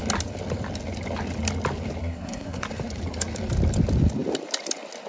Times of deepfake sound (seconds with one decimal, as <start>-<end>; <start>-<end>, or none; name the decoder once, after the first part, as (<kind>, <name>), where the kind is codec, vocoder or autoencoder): 2.0-2.6 (codec, SNAC)